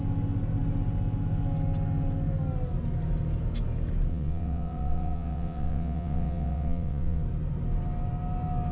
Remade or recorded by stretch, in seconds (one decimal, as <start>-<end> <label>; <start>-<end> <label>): 0.0-4.1 recorded; 4.1-7.2 remade; 7.2-8.7 recorded